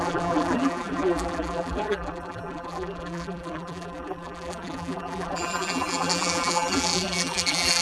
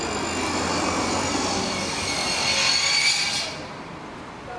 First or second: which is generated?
first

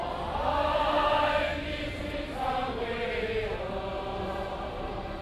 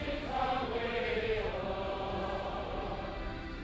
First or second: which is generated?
second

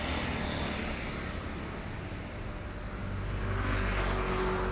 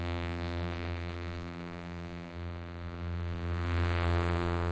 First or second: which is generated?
second